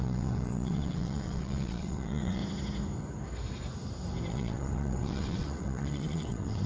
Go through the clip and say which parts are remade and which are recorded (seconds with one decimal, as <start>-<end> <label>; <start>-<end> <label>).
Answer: 0.0-2.4 remade; 2.4-4.3 recorded; 4.3-6.7 remade